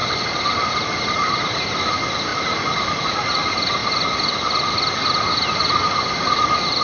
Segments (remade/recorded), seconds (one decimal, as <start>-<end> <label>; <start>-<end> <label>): 0.0-6.8 recorded